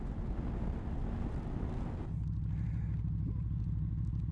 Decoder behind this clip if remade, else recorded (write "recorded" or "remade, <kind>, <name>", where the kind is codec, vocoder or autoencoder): recorded